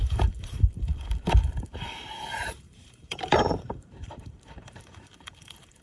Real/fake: fake